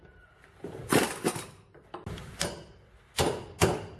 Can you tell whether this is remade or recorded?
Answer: recorded